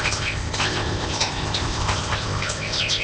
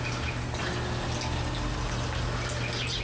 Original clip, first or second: second